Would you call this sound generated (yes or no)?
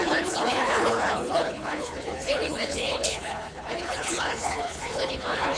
yes